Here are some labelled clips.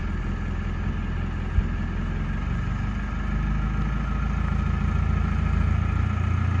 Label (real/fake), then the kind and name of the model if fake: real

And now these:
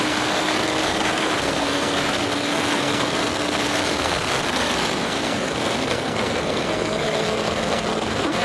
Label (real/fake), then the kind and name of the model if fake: fake, codec, SNAC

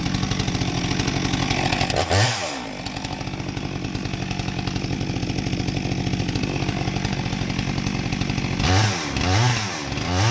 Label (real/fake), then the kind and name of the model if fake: real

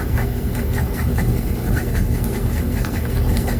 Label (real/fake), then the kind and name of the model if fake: fake, codec, SNAC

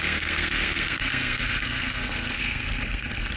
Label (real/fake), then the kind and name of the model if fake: fake, codec, SNAC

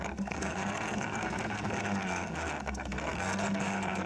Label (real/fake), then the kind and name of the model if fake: fake, codec, SNAC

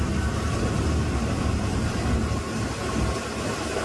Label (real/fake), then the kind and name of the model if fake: real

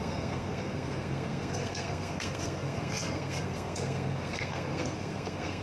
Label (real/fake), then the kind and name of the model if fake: fake, codec, SNAC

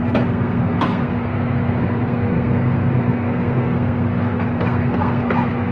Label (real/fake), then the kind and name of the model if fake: fake, codec, SNAC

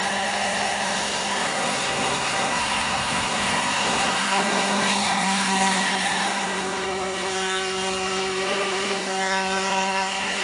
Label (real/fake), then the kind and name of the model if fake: fake, codec, SNAC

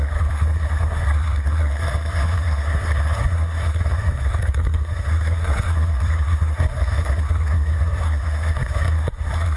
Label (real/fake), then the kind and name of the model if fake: fake, codec, SNAC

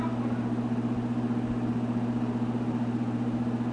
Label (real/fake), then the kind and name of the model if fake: real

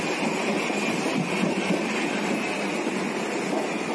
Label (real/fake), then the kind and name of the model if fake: real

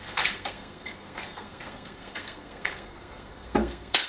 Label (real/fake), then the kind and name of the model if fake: fake, codec, SNAC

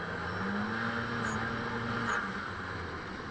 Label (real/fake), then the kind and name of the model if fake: real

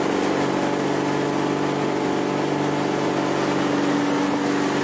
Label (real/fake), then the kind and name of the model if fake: real